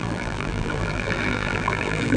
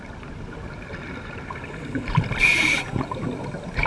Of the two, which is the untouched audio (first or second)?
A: second